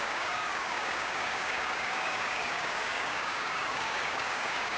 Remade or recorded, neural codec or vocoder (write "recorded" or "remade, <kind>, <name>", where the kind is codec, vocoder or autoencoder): remade, codec, DAC